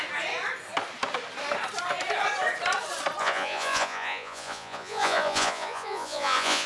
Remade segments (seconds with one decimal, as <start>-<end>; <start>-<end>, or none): 3.2-6.7